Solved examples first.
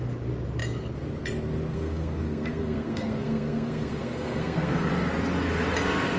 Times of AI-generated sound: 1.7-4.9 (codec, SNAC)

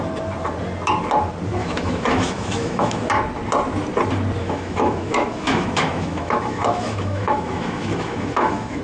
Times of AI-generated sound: 1.6-3.1 (autoencoder, DAC-VAE); 4.4-8.8

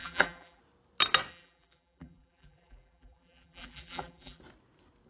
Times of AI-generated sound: 0.0-0.6 (vocoder, BigVGAN v2); 1.3-4.4